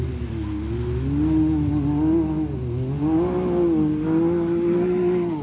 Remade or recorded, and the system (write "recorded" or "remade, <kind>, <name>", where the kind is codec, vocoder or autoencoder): recorded